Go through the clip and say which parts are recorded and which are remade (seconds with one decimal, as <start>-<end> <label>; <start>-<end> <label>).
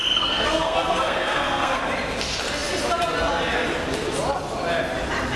0.0-1.8 remade; 1.8-5.4 recorded